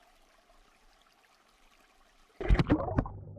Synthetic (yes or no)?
yes